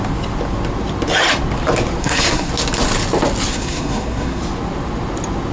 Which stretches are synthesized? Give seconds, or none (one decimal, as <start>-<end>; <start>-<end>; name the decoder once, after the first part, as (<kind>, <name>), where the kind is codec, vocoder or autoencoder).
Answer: 2.0-2.5 (codec, SNAC); 3.5-4.4